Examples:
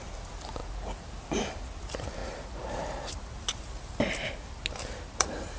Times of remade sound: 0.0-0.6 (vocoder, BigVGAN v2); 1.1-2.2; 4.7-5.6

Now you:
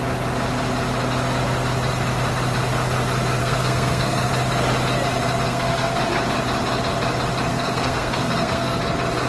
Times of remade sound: 3.4-4.3 (codec, SNAC); 5.5-6.0; 7.5-8.8

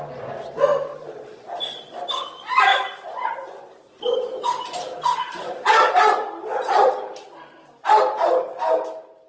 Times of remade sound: 0.7-1.6 (vocoder, BigVGAN v2); 2.7-6.9

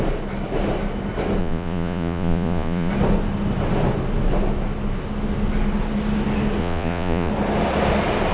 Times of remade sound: 1.4-2.9 (vocoder, Vocos); 6.6-7.3

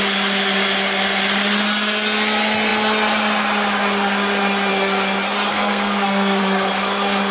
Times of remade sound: 5.5-6.4 (codec, SNAC)

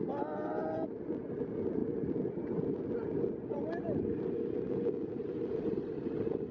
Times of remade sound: none